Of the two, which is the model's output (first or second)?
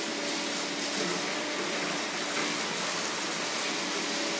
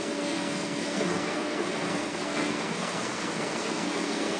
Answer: second